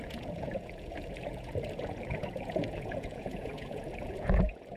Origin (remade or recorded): remade